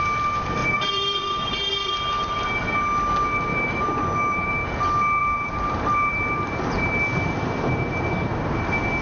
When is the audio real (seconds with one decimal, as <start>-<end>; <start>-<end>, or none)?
0.0-0.6; 1.9-3.5; 4.7-5.2; 6.2-9.0